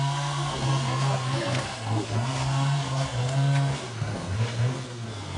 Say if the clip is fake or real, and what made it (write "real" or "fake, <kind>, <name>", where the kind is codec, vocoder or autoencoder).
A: fake, codec, SNAC